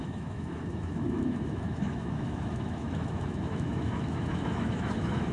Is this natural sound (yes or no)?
no